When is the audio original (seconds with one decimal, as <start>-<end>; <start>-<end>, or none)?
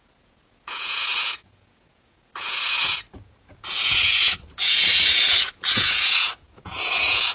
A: none